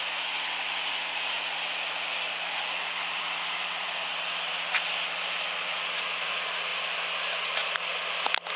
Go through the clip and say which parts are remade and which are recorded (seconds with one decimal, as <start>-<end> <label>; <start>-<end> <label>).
0.0-4.1 remade; 4.1-5.1 recorded; 5.1-6.7 remade; 6.7-8.6 recorded